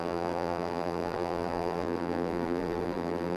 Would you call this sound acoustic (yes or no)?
no